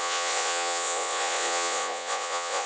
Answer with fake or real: fake